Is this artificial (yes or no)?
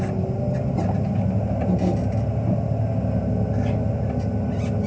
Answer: no